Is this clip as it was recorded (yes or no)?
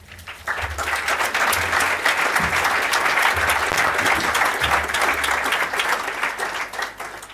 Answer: yes